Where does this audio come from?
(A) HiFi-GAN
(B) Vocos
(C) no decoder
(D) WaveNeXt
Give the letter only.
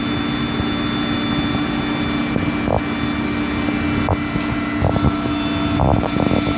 C